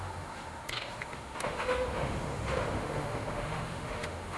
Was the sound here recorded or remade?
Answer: remade